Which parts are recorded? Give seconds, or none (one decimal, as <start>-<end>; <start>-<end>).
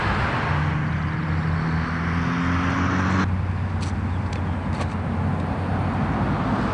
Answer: 0.0-6.7